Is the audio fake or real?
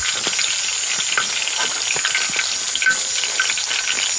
real